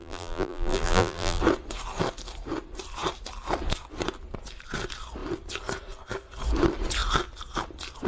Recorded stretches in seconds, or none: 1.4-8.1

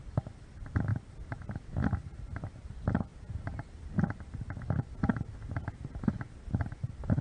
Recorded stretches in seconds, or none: 0.9-1.5; 3.1-7.2

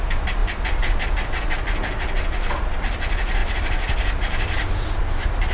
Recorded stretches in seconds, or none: 0.0-3.4; 5.0-5.5

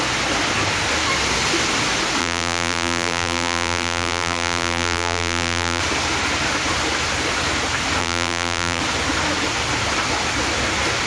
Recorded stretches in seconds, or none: 0.0-2.2; 5.8-8.0; 8.8-11.1

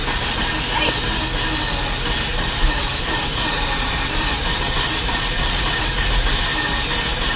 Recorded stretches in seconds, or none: 0.0-2.3; 6.3-7.4

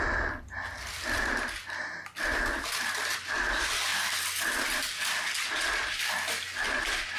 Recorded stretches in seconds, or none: 0.0-7.2

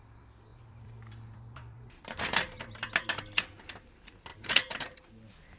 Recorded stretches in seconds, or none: 0.0-0.5; 2.6-4.3; 5.0-5.6

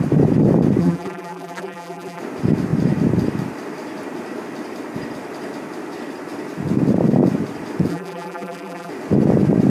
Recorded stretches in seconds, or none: 0.0-0.8; 2.2-7.9; 8.9-9.7